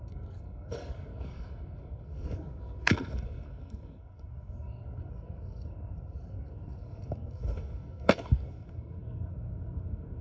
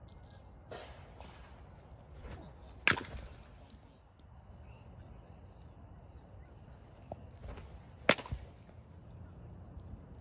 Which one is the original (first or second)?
second